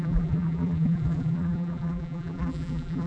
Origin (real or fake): fake